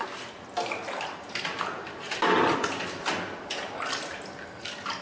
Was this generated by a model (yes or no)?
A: no